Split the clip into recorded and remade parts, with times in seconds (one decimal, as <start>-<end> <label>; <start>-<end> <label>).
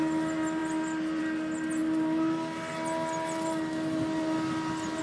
0.0-5.0 recorded